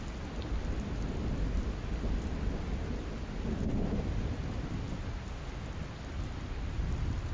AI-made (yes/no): no